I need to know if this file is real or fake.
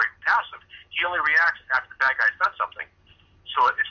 real